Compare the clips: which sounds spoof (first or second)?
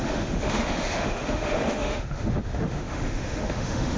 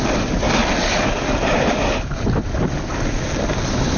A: first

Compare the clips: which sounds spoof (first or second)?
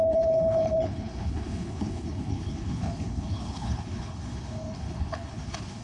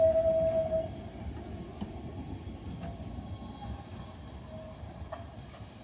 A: first